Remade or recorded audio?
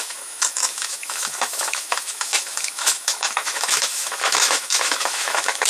remade